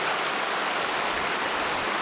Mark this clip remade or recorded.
recorded